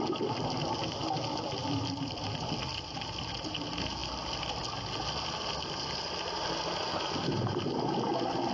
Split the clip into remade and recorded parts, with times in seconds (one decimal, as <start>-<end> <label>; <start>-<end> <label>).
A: 0.0-8.5 recorded

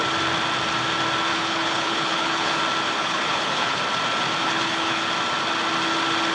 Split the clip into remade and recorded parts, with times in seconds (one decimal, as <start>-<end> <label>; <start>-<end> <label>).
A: 0.0-1.3 recorded; 1.3-2.6 remade; 2.6-3.0 recorded; 3.0-3.8 remade; 3.8-4.4 recorded; 4.4-5.0 remade; 5.0-6.3 recorded

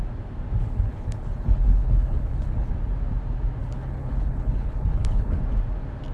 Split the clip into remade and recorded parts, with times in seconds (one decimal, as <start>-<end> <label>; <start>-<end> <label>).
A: 0.0-0.6 recorded; 0.6-2.7 remade; 2.7-3.6 recorded; 3.6-5.4 remade; 5.4-6.1 recorded

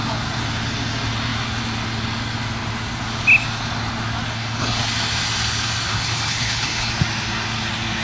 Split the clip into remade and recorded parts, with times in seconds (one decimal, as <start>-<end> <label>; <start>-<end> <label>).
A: 0.0-4.3 recorded; 4.3-4.8 remade; 4.8-5.9 recorded; 5.9-6.9 remade; 6.9-8.0 recorded

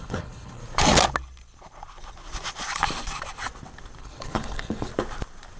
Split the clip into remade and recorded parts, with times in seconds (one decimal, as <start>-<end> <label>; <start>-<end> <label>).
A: 0.0-0.6 remade; 0.6-4.0 recorded; 4.0-4.9 remade; 4.9-5.6 recorded

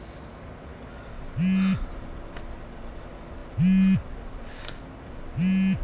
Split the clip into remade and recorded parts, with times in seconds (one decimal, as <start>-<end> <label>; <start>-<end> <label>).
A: 0.0-5.8 recorded